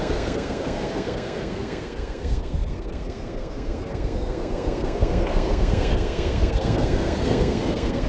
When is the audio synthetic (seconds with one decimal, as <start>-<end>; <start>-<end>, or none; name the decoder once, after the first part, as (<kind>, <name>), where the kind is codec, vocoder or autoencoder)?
0.0-8.1 (codec, SNAC)